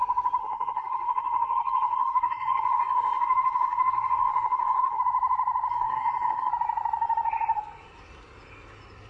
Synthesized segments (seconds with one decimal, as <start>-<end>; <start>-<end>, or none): 0.4-5.0; 5.7-6.5